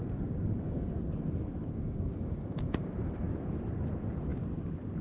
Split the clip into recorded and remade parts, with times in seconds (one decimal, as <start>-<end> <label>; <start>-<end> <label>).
0.0-0.9 remade; 0.9-1.6 recorded; 1.6-3.3 remade; 3.3-5.0 recorded